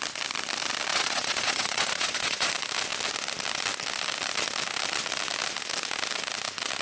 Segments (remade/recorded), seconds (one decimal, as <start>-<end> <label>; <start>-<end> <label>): 0.0-0.9 recorded; 0.9-2.5 remade; 2.5-6.8 recorded